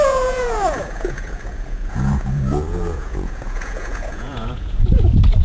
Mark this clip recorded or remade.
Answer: remade